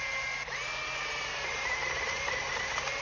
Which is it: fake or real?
fake